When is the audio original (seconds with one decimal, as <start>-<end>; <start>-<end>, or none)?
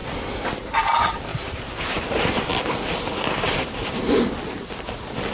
0.5-1.3; 4.2-5.3